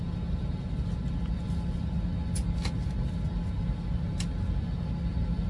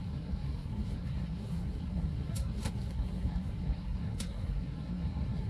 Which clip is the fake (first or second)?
second